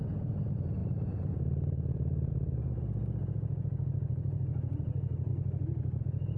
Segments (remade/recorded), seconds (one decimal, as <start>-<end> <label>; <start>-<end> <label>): 0.0-5.3 remade; 5.3-6.0 recorded; 6.0-6.4 remade